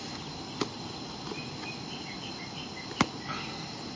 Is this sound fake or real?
real